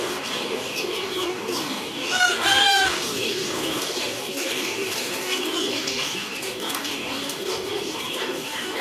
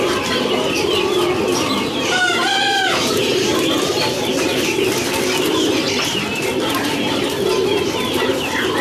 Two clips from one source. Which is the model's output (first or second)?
first